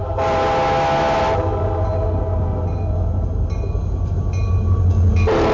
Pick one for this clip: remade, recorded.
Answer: recorded